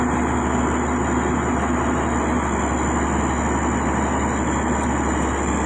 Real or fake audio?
real